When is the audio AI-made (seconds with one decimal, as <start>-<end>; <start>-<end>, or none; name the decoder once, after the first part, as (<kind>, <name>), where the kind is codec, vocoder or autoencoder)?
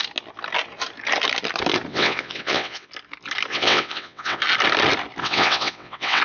1.9-2.9 (vocoder, WaveNeXt); 3.5-4.4; 5.2-6.2